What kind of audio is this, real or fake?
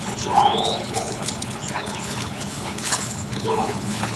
fake